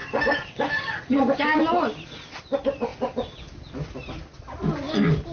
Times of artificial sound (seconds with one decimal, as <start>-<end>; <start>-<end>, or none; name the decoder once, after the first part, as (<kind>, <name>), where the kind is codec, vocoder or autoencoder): 0.0-1.6 (codec, DAC)